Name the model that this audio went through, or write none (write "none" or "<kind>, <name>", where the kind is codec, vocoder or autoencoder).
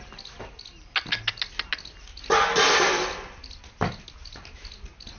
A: none